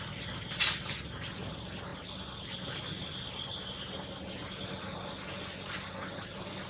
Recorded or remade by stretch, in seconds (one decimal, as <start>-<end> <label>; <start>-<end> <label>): 0.0-6.7 recorded